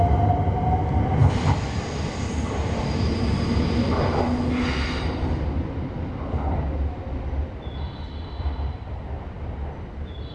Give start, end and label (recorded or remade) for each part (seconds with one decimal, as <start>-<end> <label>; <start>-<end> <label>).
0.0-10.3 recorded